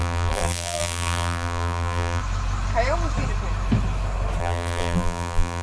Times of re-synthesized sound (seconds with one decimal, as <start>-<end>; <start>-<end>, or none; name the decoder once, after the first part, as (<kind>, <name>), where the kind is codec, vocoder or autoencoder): 0.0-2.2 (vocoder, BigVGAN v2); 4.4-5.6